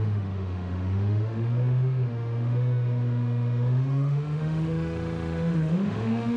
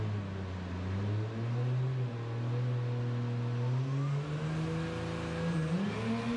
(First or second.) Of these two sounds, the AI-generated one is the first